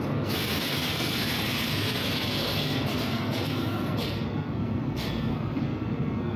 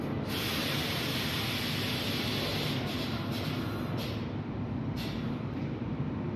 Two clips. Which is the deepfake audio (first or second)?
first